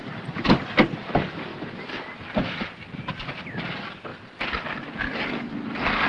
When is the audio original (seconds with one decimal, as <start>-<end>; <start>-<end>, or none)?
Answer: 1.0-1.5; 2.6-6.1